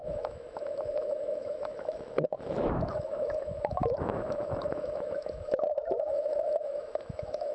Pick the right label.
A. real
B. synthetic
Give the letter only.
B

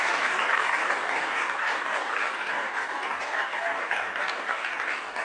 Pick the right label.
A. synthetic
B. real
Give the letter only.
A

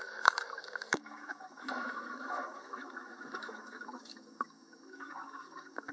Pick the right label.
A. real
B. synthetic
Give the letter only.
B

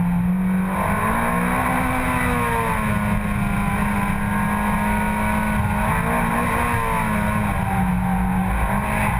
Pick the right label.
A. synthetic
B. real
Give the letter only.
B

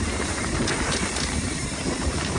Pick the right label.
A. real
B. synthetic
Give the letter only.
B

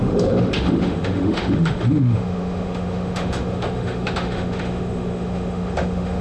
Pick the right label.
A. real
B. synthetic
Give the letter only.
B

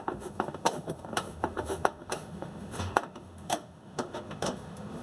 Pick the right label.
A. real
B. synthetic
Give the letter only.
B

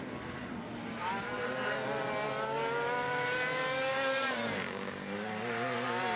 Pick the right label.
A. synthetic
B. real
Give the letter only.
B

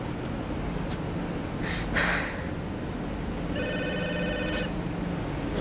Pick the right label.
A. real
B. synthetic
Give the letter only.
A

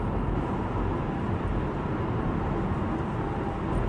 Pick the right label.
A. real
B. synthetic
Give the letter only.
A